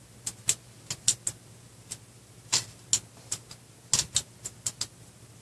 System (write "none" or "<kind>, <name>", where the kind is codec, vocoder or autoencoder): none